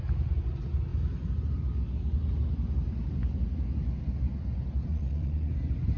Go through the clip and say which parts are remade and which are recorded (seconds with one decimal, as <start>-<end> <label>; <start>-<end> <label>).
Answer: 0.0-4.9 recorded; 4.9-5.5 remade; 5.5-6.0 recorded